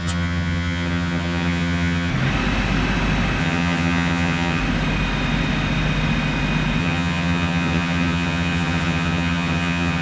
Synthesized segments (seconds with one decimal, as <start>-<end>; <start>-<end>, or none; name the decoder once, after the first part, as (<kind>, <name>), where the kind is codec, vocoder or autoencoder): 0.0-2.1 (vocoder, HiFi-GAN); 3.4-4.6; 6.8-10.0